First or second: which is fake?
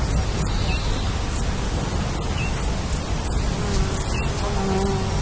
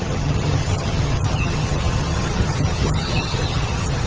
second